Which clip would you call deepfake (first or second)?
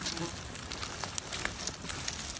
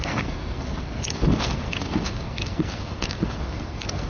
second